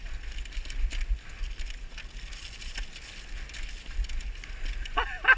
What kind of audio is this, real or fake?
real